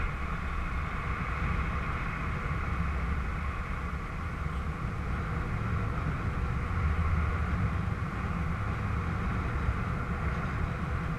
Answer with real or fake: real